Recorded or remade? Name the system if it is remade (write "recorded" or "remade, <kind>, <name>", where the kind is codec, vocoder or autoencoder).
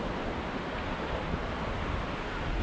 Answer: recorded